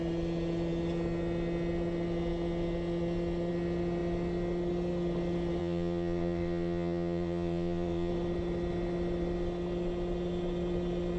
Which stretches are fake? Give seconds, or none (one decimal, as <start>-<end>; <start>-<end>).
5.6-8.1